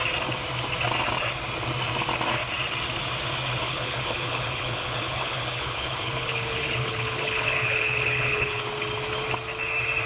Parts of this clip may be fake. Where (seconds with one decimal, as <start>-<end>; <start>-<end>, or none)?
3.6-8.6